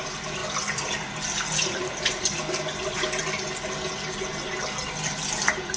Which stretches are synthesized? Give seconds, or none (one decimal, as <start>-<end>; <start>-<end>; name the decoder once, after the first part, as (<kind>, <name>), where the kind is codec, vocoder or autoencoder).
none